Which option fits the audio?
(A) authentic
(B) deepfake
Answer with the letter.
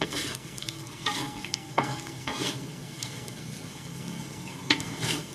B